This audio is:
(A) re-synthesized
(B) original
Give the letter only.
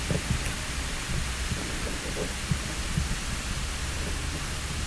B